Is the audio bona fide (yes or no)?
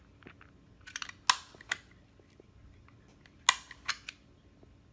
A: yes